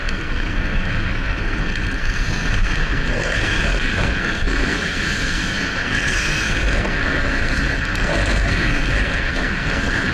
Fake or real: fake